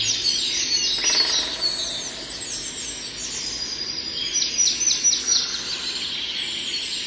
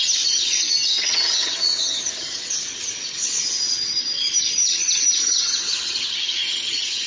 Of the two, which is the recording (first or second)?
first